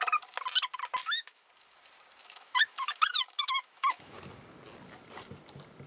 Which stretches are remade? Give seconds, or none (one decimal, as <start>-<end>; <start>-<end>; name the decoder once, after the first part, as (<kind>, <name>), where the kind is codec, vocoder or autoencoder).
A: 1.0-1.5 (autoencoder, DAC-VAE); 2.2-4.2